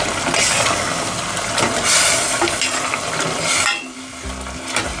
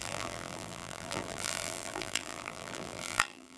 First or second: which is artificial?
second